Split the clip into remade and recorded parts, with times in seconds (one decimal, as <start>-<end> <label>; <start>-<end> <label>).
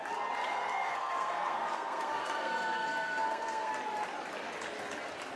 0.0-0.5 recorded; 0.5-3.7 remade; 3.7-5.4 recorded